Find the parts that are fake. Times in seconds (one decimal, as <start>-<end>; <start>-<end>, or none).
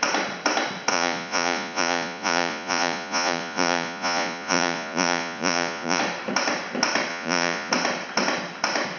0.9-6.0; 7.1-7.7